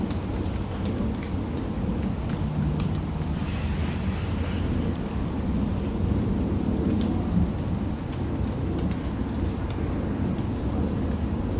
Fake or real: real